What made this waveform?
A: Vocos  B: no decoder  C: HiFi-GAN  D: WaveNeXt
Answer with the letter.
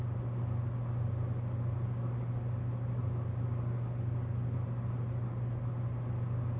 B